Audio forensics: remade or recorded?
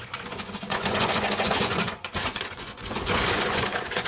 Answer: remade